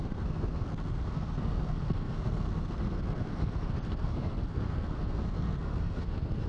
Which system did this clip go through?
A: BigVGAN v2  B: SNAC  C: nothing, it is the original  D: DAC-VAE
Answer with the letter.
B